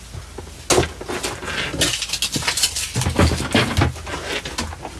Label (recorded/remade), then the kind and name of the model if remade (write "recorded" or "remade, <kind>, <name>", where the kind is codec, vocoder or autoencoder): recorded